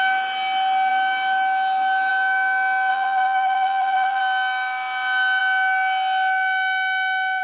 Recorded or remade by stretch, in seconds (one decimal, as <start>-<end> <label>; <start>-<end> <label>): 0.0-2.9 recorded; 2.9-4.2 remade; 4.2-7.4 recorded